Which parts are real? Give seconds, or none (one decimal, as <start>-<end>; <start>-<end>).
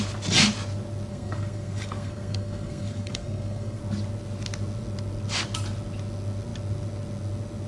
0.0-1.1; 3.8-7.7